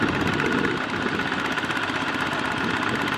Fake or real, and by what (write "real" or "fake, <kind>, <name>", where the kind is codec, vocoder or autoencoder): real